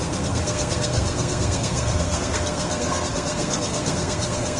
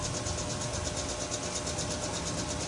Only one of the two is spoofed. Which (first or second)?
first